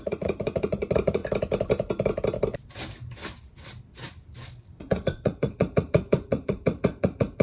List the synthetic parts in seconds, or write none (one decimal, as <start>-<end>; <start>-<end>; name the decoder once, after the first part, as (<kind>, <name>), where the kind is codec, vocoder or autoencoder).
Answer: 0.0-1.2 (vocoder, Vocos); 4.8-7.4